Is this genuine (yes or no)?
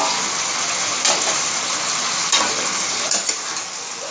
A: yes